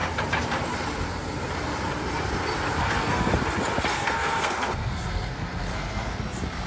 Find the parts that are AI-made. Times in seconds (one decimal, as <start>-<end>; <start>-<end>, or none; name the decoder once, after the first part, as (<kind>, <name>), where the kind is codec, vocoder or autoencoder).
2.8-3.3 (codec, SNAC); 3.9-6.2